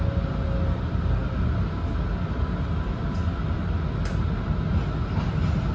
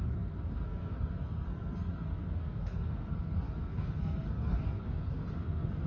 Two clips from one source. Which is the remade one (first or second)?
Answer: second